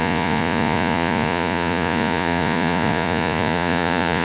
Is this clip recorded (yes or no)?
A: no